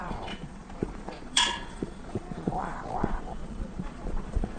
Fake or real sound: fake